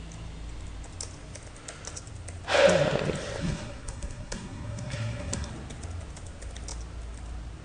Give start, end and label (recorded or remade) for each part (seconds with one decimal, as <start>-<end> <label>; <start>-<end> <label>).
0.0-3.4 recorded; 3.4-5.5 remade; 5.5-7.6 recorded